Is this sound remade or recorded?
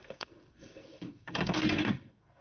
remade